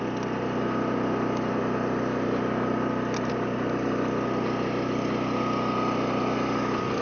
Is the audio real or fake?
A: real